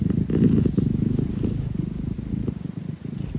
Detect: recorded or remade recorded